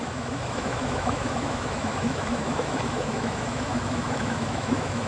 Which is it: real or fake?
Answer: fake